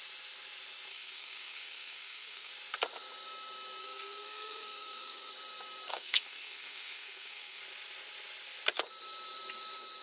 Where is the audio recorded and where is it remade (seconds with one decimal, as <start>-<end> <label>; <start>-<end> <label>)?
0.0-0.9 recorded; 0.9-2.5 remade; 2.5-3.8 recorded; 3.8-5.3 remade; 5.3-5.9 recorded; 5.9-7.6 remade; 7.6-10.0 recorded